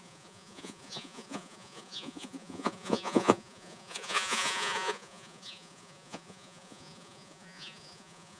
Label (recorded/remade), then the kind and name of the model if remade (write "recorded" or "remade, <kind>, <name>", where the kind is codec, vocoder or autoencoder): remade, vocoder, Vocos